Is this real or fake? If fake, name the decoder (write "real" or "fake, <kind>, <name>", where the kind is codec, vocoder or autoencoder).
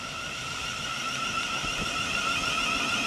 real